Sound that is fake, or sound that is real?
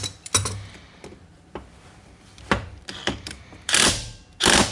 fake